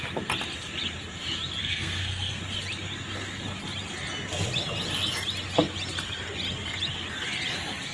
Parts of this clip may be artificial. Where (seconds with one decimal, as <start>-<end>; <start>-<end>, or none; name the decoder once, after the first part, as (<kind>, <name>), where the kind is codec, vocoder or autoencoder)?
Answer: 1.6-2.4 (codec, SNAC)